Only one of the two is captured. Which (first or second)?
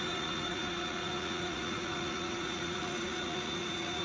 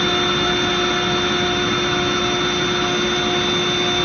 second